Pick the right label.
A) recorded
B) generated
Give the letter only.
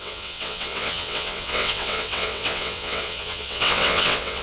B